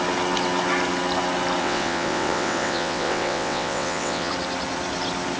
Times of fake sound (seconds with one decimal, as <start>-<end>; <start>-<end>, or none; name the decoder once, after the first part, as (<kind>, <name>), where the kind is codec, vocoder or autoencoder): 1.6-4.3 (vocoder, WaveNeXt)